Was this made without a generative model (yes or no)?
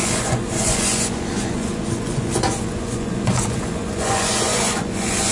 no